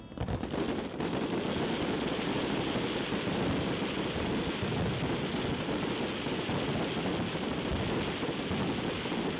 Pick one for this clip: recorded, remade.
recorded